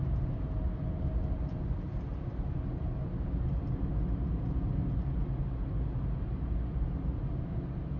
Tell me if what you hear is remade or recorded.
recorded